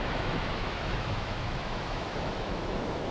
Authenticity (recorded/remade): remade